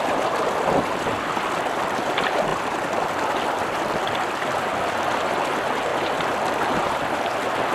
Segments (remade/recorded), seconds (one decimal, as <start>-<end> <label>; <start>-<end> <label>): 0.0-7.7 recorded